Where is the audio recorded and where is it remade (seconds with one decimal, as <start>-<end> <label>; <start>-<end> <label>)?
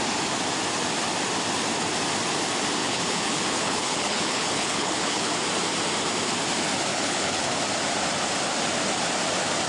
0.0-2.8 recorded; 2.8-5.3 remade; 5.3-6.9 recorded; 6.9-7.6 remade; 7.6-9.7 recorded